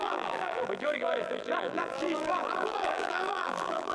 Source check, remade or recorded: remade